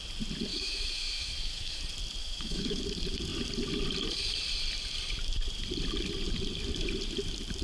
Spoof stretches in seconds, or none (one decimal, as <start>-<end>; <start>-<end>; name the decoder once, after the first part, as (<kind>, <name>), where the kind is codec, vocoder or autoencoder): 0.5-1.8 (autoencoder, DAC-VAE); 2.2-2.8